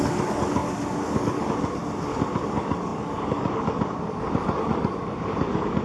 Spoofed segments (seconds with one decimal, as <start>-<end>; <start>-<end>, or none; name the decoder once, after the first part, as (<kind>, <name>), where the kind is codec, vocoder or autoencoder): 0.0-1.8 (codec, DAC); 2.4-5.8